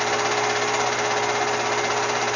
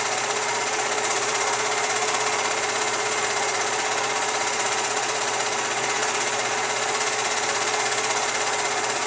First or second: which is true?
first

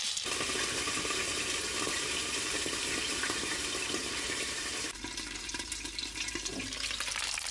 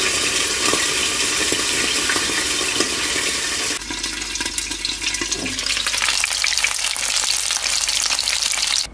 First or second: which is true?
second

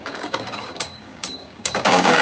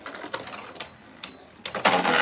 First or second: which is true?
second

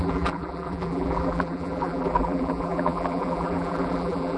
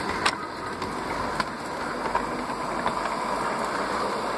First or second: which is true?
second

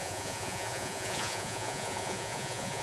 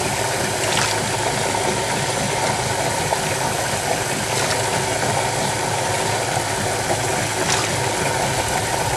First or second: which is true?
second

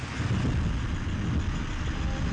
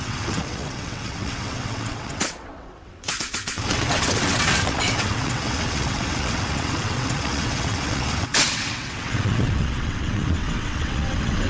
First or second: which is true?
first